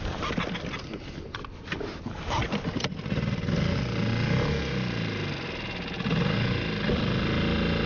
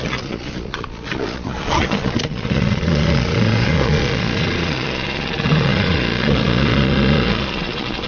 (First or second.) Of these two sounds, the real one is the first